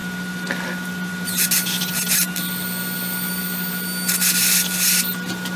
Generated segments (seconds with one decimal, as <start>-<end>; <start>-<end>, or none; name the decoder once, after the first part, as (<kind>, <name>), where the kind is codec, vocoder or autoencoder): none